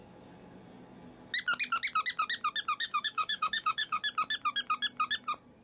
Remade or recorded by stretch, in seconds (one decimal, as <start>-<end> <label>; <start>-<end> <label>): 0.0-2.8 recorded; 2.8-4.0 remade; 4.0-5.6 recorded